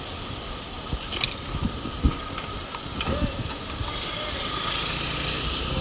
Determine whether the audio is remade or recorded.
recorded